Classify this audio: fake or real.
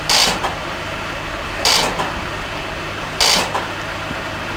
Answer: real